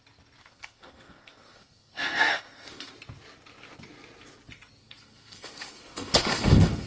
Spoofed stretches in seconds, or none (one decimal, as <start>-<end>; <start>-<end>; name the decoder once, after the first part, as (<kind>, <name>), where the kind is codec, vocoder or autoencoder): 0.4-2.9 (codec, SNAC); 4.8-6.9